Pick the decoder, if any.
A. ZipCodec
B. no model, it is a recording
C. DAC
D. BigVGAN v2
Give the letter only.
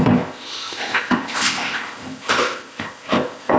A